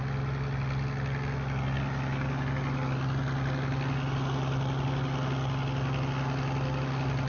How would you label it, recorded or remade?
recorded